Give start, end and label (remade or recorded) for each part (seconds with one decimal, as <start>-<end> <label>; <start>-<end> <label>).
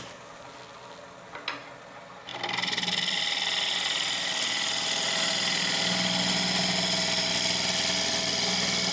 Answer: 0.0-8.9 recorded